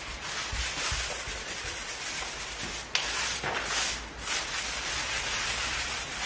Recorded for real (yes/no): yes